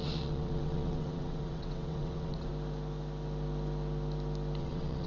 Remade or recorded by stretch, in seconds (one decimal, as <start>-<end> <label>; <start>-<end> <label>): 0.0-2.5 remade; 2.5-4.6 recorded; 4.6-5.1 remade

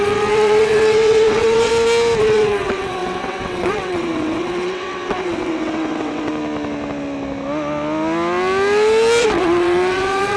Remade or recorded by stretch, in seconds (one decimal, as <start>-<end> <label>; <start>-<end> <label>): 0.0-1.7 remade; 1.7-2.2 recorded; 2.2-6.3 remade; 6.3-9.2 recorded; 9.2-10.4 remade

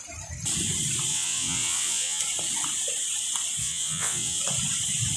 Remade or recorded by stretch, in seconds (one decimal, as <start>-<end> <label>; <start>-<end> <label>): 0.0-1.1 recorded; 1.1-2.2 remade; 2.2-3.6 recorded; 3.6-4.4 remade; 4.4-5.2 recorded

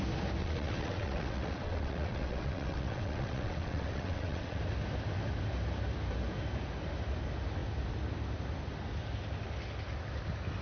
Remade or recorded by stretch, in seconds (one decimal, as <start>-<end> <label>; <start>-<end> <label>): 0.0-0.4 recorded; 0.4-4.6 remade; 4.6-10.6 recorded

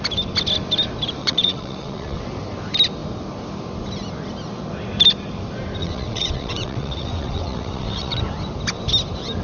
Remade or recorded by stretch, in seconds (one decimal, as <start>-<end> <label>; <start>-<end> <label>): 0.0-1.2 recorded; 1.2-2.2 remade; 2.2-5.8 recorded; 5.8-8.2 remade; 8.2-9.4 recorded

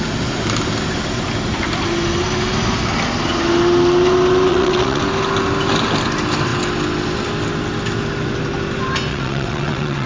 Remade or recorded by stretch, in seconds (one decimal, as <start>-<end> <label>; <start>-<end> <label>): 0.0-4.5 recorded; 4.5-5.0 remade; 5.0-9.1 recorded; 9.1-10.1 remade

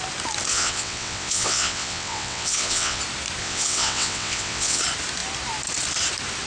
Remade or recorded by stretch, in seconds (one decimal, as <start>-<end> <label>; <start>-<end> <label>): 0.0-0.5 recorded; 0.5-3.0 remade; 3.0-3.4 recorded; 3.4-4.8 remade; 4.8-6.5 recorded

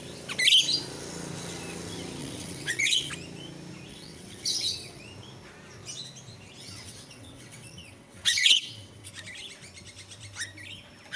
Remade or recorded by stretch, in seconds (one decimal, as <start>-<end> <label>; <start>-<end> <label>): 0.0-2.2 recorded; 2.2-3.1 remade; 3.1-3.9 recorded; 3.9-5.0 remade; 5.0-6.6 recorded; 6.6-9.1 remade; 9.1-11.2 recorded